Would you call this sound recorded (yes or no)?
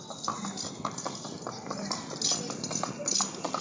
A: yes